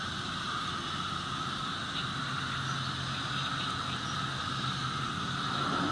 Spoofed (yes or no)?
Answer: no